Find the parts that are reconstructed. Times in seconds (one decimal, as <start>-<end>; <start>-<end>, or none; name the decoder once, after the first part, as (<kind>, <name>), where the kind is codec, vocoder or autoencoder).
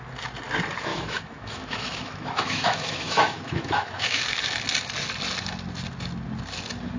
0.9-4.2 (autoencoder, DAC-VAE)